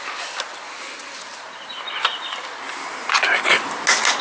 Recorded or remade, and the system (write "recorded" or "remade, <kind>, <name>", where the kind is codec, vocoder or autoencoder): recorded